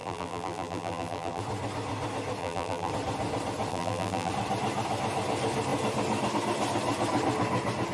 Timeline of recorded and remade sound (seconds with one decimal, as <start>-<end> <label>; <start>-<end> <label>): 0.0-1.4 remade; 1.4-2.4 recorded; 2.4-2.9 remade; 2.9-3.7 recorded; 3.7-4.3 remade; 4.3-7.9 recorded